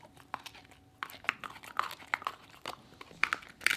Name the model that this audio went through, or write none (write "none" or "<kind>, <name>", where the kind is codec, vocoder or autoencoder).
none